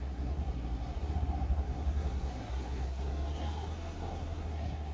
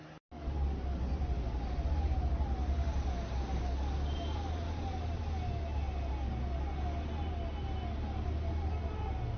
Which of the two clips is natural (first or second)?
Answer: second